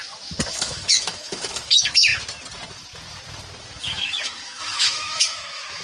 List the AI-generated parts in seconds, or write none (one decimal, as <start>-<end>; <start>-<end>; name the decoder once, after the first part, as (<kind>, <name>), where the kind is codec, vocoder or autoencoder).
0.5-2.1 (autoencoder, DAC-VAE); 3.8-5.8